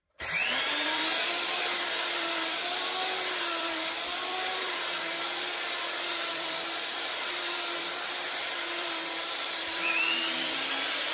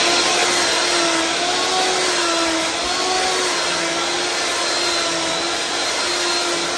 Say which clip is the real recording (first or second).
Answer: second